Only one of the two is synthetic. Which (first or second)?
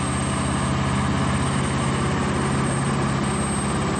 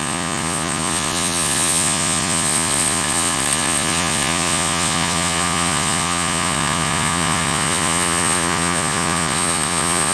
second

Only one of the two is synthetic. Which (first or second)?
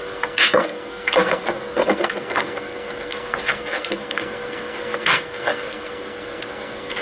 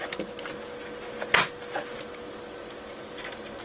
first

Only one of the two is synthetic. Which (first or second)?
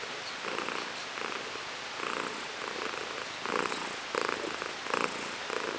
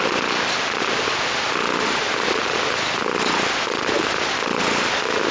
second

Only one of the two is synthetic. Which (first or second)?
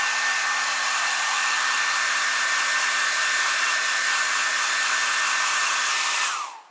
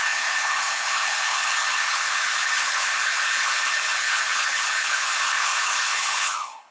second